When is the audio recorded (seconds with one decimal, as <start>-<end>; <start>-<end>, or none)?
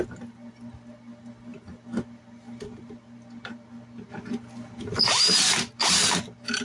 0.0-6.6